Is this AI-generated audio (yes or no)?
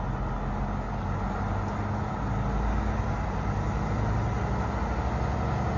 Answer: no